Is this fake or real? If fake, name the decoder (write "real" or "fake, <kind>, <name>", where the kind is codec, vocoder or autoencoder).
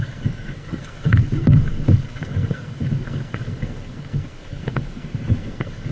fake, codec, SNAC